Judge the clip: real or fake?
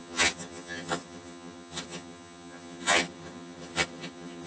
fake